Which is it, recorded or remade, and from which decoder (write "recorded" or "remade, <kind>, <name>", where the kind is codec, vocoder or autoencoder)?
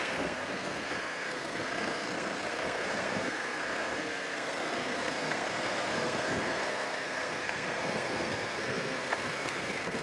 remade, codec, SNAC